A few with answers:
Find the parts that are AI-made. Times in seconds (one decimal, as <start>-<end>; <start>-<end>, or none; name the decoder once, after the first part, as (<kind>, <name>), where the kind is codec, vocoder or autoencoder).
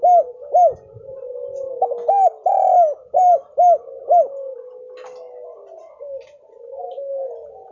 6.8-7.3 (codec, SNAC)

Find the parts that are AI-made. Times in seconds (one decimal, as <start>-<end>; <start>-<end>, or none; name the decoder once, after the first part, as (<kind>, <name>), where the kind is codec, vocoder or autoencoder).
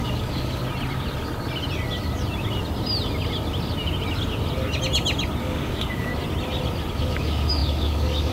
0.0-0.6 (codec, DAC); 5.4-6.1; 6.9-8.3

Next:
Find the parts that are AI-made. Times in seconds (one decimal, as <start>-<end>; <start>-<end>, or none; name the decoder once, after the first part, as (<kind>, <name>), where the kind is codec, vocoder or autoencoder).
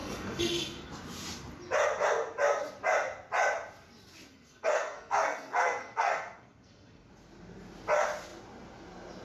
0.0-0.9 (codec, SNAC); 4.3-7.1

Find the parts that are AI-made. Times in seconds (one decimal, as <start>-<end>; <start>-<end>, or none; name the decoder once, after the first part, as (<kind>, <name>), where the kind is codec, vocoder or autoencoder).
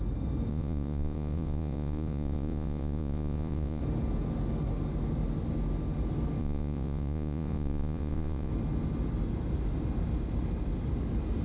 0.5-3.8 (vocoder, Vocos); 6.4-8.5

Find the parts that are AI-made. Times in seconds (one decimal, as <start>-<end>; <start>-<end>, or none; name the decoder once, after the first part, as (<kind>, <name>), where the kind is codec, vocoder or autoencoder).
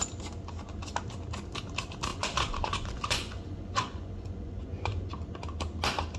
2.1-5.1 (vocoder, Vocos)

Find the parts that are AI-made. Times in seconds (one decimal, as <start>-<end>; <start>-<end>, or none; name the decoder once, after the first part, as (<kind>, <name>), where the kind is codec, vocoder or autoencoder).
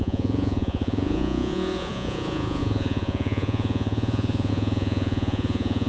0.0-5.9 (vocoder, Vocos)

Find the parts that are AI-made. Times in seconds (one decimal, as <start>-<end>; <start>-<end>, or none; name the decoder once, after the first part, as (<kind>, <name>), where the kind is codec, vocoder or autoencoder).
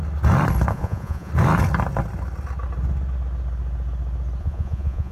0.7-1.3 (vocoder, Vocos); 4.4-5.1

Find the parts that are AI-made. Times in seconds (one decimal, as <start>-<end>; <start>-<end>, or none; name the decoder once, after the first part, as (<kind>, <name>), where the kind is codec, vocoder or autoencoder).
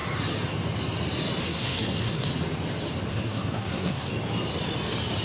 1.4-2.3 (codec, SNAC); 3.1-4.1